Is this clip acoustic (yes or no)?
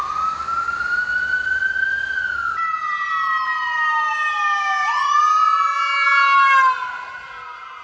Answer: yes